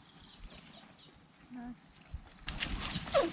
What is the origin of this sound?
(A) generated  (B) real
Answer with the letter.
B